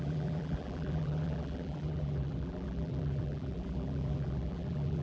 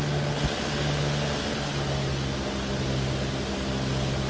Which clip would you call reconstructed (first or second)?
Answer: first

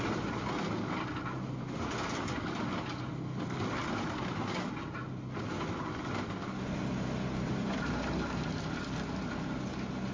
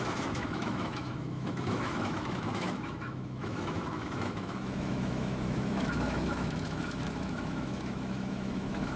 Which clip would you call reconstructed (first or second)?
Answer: second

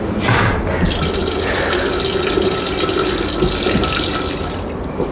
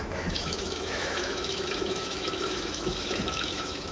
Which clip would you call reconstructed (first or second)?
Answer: second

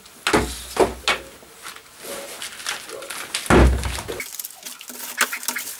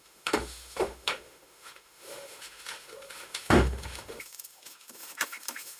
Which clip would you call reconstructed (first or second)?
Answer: second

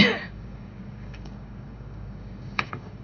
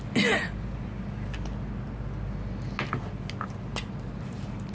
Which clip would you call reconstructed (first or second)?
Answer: first